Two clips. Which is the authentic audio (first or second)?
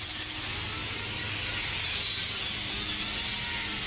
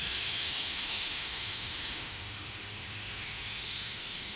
first